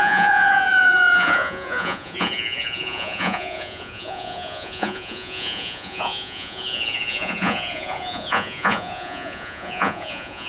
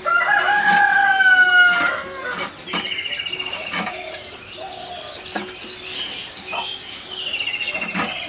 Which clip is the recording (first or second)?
second